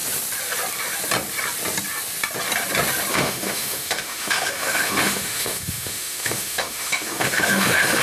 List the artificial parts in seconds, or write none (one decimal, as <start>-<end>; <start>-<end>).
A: 3.1-8.0